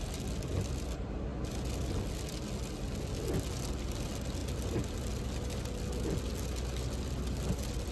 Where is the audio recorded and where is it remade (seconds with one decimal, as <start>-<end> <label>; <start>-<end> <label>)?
0.0-7.9 recorded